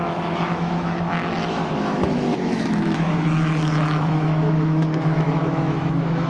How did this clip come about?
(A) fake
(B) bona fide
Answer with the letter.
A